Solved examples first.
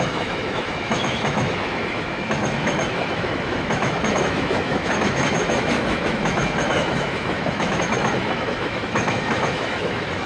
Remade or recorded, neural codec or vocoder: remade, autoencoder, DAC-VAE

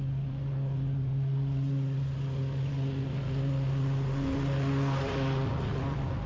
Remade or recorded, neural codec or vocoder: recorded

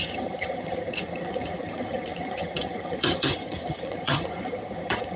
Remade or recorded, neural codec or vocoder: remade, vocoder, HiFi-GAN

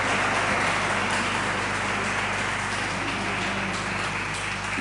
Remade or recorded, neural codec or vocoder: recorded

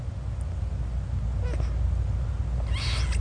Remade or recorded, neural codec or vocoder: recorded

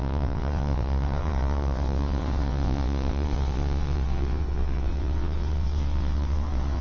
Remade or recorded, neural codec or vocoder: remade, vocoder, WaveNeXt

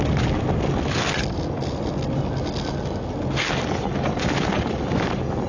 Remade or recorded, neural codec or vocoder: recorded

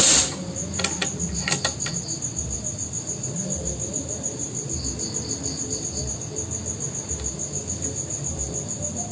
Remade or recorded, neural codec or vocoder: recorded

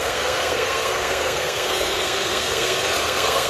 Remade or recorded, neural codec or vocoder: remade, codec, SNAC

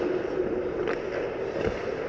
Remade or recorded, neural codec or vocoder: recorded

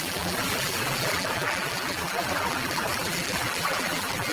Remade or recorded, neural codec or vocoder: remade, vocoder, BigVGAN v2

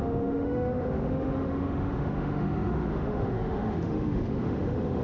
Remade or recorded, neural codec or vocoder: remade, autoencoder, DAC-VAE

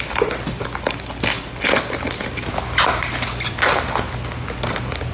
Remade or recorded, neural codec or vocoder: recorded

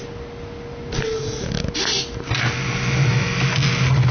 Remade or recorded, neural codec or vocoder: recorded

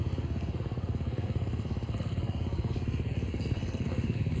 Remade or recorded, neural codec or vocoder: remade, codec, SNAC